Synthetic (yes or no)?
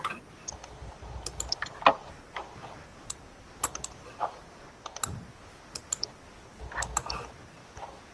no